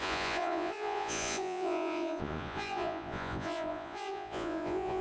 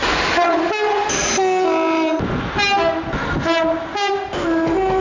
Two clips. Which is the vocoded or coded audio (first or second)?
first